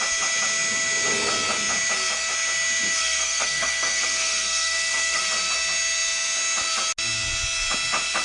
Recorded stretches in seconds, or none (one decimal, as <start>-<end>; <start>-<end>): 0.0-3.0; 5.2-8.2